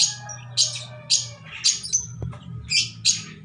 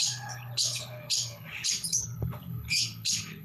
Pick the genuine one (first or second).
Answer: first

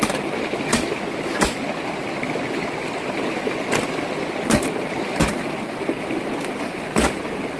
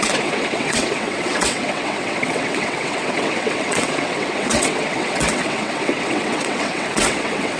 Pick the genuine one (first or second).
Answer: first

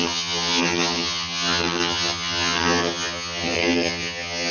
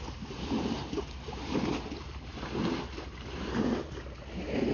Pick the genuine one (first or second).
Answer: second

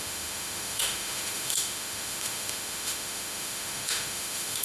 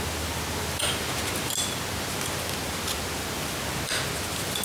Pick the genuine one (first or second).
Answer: second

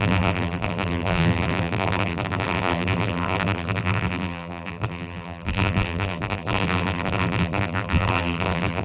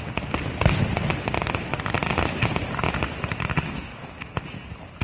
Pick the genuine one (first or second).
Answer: second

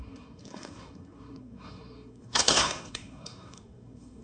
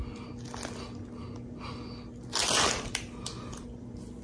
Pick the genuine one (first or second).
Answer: second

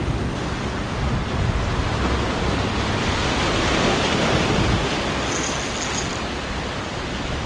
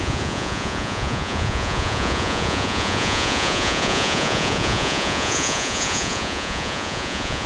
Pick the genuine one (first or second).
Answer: first